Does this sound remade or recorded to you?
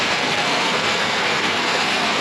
remade